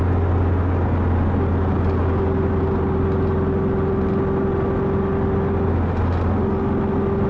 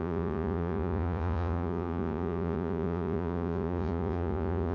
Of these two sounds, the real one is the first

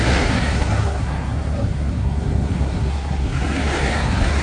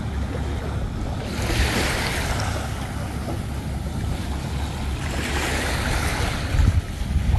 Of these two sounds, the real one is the second